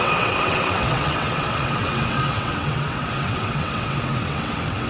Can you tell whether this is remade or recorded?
remade